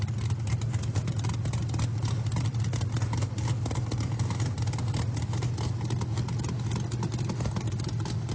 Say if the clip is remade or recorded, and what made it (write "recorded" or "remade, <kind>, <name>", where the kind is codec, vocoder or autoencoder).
recorded